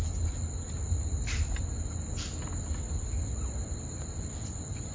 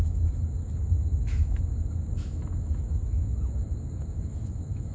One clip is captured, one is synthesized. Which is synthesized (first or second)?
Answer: second